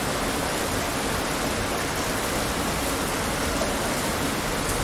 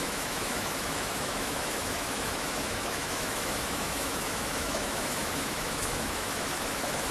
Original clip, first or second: first